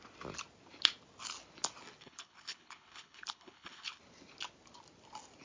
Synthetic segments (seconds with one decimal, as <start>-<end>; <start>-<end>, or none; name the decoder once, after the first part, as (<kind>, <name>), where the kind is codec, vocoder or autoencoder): 2.0-4.0 (codec, HILCodec)